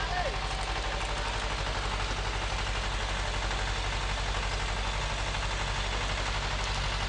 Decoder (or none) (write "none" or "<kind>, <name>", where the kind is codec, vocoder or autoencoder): none